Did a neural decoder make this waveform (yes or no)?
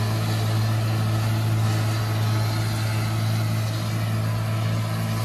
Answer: no